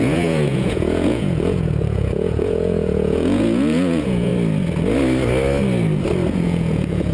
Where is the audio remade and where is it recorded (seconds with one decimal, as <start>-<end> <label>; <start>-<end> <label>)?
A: 0.0-4.3 remade; 4.3-6.3 recorded; 6.3-7.1 remade